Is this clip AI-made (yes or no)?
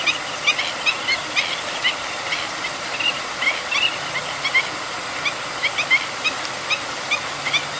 no